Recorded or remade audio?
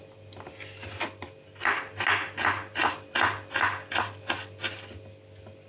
recorded